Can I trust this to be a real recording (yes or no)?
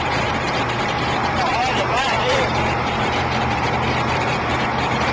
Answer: no